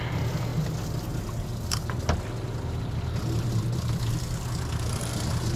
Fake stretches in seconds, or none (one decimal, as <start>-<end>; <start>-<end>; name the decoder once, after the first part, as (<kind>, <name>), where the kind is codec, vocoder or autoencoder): none